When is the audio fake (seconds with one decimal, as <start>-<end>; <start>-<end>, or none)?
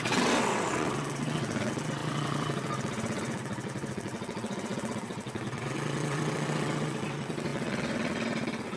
0.0-8.8